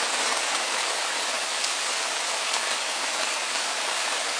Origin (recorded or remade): remade